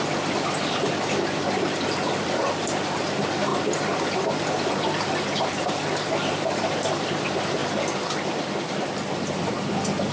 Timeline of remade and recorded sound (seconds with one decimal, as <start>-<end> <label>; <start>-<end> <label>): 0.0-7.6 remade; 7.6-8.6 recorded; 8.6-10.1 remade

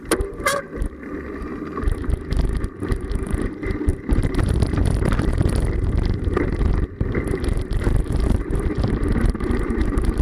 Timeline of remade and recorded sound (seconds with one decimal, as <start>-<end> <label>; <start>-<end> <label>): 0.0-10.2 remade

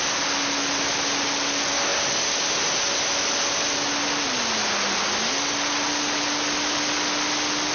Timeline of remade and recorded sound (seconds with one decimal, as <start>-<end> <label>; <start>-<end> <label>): 0.0-7.7 recorded

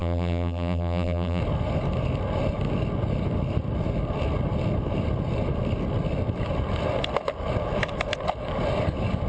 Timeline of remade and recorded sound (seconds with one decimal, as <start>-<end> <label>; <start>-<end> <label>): 0.0-1.4 remade; 1.4-9.3 recorded

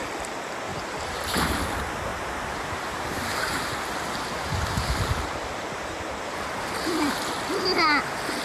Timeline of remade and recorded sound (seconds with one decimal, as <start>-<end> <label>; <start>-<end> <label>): 0.0-0.7 recorded; 0.7-1.6 remade; 1.6-2.1 recorded; 2.1-7.1 remade; 7.1-8.4 recorded

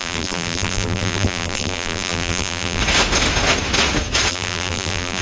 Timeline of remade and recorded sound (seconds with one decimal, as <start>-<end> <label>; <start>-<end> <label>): 0.0-2.8 remade; 2.8-4.3 recorded; 4.3-5.2 remade

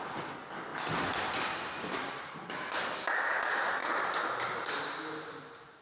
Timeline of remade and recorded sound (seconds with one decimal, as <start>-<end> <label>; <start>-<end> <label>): 0.0-5.8 recorded